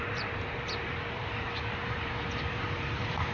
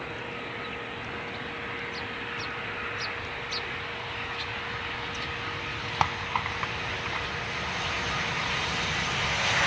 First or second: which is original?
second